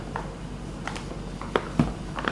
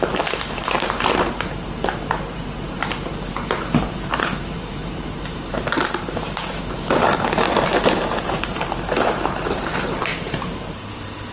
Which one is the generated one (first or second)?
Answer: second